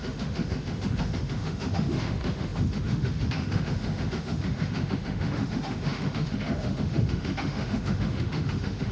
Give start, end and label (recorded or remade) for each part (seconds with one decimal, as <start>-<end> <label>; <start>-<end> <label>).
0.0-8.9 remade